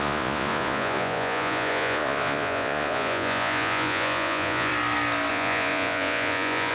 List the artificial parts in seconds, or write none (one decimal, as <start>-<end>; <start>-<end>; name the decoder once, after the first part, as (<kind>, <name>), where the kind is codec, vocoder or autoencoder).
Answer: 0.0-4.7 (vocoder, Vocos); 5.3-6.7